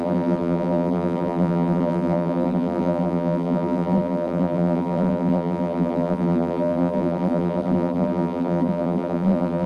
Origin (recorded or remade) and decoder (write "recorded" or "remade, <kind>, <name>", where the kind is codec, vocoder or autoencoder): remade, vocoder, BigVGAN v2